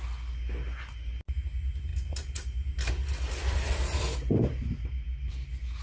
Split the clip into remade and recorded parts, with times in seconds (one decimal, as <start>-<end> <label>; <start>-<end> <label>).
0.0-4.5 recorded; 4.5-5.3 remade; 5.3-5.8 recorded